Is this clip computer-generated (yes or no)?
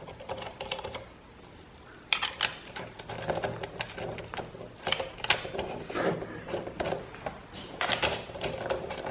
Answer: no